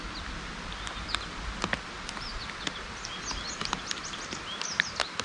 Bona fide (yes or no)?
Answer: yes